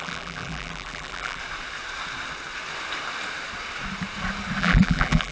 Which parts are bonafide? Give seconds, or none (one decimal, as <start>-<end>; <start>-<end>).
1.4-4.6

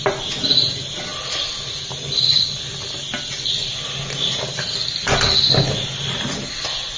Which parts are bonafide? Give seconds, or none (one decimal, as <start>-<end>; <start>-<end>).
0.0-7.0